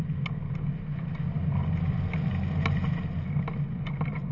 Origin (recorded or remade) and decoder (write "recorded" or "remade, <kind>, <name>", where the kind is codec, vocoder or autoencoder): recorded